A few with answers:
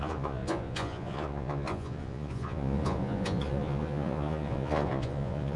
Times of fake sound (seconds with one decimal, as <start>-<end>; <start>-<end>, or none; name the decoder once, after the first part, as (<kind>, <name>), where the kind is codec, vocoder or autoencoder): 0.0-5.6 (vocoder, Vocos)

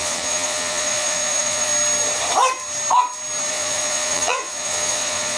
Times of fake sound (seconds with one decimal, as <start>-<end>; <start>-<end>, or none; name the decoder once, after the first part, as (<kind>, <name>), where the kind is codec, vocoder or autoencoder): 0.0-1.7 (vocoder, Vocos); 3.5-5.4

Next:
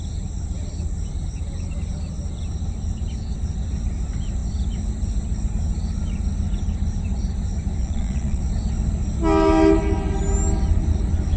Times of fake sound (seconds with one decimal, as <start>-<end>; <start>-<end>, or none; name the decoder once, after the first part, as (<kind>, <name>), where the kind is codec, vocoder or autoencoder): 7.8-8.4 (vocoder, Vocos)

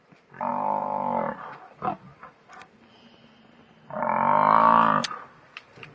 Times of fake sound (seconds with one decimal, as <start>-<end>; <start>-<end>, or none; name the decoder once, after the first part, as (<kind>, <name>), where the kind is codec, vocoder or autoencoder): none